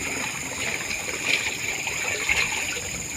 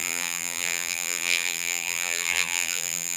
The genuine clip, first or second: first